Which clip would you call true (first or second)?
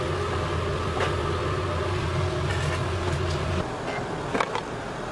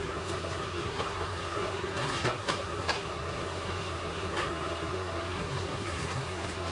first